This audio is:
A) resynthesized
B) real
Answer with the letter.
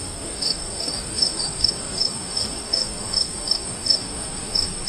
A